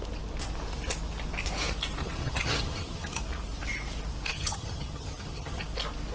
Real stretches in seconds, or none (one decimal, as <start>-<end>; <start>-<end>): 0.0-2.0; 3.2-4.3; 5.6-6.1